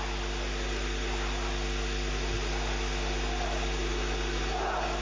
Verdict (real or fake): real